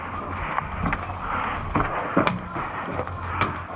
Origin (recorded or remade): recorded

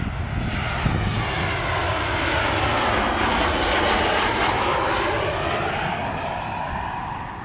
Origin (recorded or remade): recorded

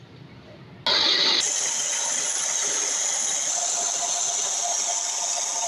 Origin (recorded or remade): recorded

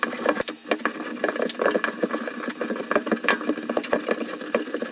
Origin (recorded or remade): recorded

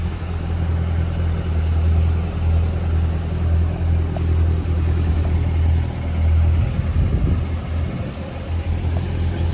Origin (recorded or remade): recorded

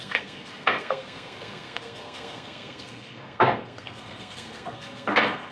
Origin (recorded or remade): remade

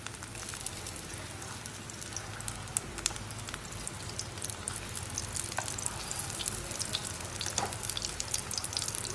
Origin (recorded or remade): recorded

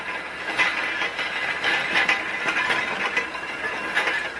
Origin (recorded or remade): recorded